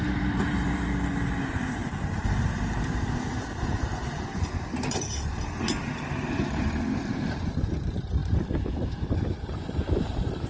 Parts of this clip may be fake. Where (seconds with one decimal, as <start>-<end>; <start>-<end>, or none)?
0.0-0.9; 1.4-5.4; 6.5-10.5

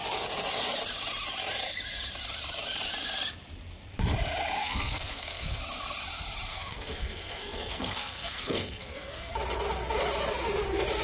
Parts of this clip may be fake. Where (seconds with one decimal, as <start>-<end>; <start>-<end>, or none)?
4.6-5.6; 6.5-9.3

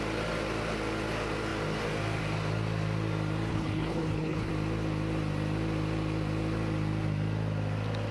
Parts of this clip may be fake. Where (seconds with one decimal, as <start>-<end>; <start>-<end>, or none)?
3.5-4.5

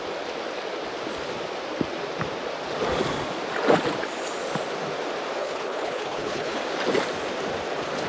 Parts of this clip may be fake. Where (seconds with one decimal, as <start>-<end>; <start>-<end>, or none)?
5.4-6.6

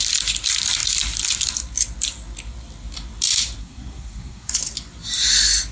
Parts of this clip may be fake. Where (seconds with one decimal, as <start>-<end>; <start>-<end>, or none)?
3.6-4.5

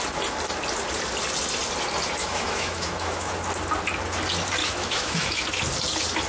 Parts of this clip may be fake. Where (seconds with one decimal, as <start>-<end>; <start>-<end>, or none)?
2.2-3.3; 4.6-5.4

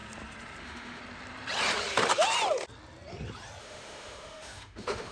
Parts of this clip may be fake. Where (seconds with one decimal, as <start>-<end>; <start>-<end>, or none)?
0.6-1.0; 3.6-5.1

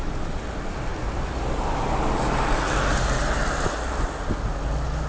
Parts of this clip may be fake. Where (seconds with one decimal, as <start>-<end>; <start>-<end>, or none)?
none